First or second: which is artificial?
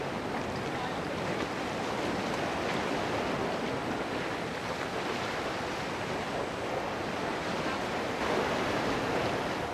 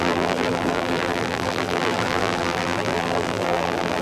second